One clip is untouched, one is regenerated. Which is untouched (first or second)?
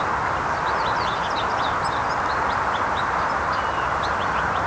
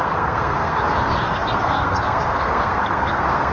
first